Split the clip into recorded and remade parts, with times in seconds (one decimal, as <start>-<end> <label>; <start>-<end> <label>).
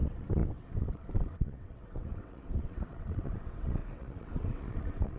0.0-5.2 remade